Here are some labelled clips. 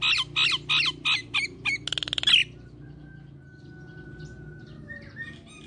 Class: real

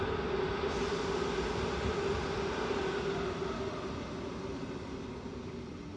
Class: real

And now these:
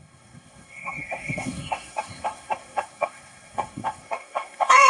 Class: fake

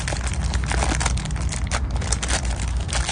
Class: real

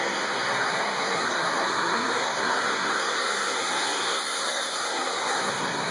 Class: fake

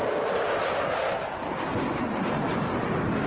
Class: real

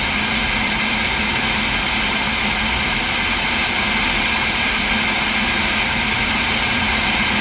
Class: real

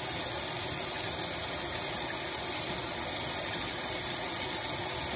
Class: real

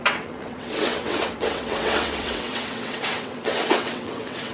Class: fake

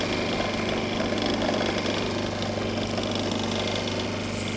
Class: real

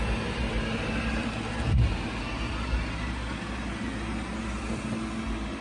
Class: real